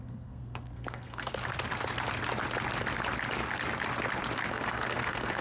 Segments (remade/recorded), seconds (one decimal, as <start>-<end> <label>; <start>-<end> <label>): 0.0-1.3 remade; 1.3-4.5 recorded; 4.5-5.4 remade